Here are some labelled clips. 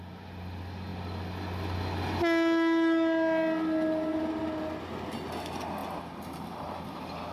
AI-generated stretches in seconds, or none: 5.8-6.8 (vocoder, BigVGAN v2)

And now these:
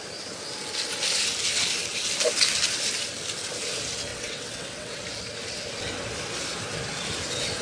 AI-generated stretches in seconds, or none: 4.1-5.0 (vocoder, WaveNeXt)

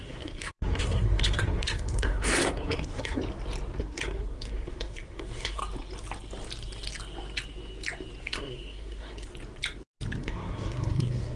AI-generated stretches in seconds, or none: 0.0-3.2 (codec, SNAC); 3.8-5.6; 8.2-9.3; 10.2-11.4

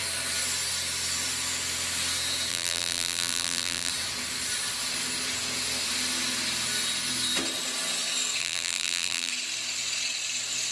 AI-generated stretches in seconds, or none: 2.5-3.9 (vocoder, BigVGAN v2); 8.4-9.3